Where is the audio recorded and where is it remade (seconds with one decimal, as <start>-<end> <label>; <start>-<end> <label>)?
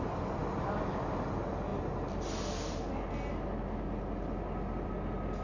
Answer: 0.0-5.4 recorded